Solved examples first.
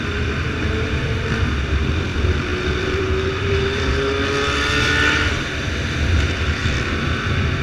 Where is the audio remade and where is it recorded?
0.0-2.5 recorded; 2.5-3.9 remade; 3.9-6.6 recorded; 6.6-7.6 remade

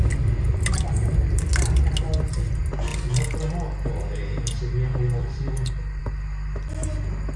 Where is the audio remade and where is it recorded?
0.0-0.5 recorded; 0.5-1.5 remade; 1.5-5.2 recorded; 5.2-6.0 remade; 6.0-7.4 recorded

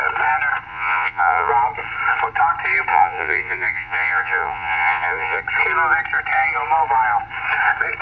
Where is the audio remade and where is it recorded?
0.0-0.7 recorded; 0.7-1.5 remade; 1.5-2.9 recorded; 2.9-5.4 remade; 5.4-8.0 recorded